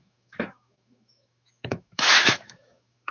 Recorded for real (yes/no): no